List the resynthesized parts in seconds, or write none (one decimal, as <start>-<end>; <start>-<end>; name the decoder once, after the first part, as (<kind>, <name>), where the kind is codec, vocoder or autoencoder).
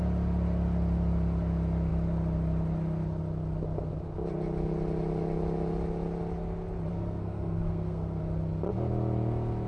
6.9-8.2 (codec, SNAC)